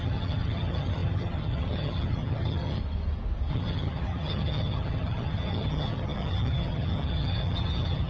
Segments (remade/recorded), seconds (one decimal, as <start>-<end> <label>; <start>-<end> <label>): 0.0-2.8 remade; 2.8-3.5 recorded; 3.5-8.1 remade

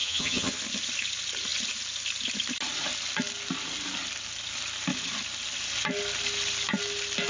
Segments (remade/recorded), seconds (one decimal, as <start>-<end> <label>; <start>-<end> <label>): 0.0-0.6 remade; 0.6-7.3 recorded

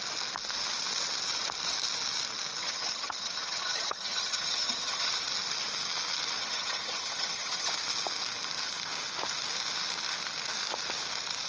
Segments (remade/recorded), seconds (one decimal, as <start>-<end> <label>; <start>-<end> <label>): 0.0-2.6 recorded; 2.6-5.1 remade; 5.1-6.4 recorded; 6.4-7.7 remade; 7.7-11.5 recorded